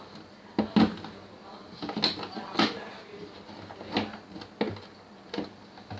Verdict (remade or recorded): recorded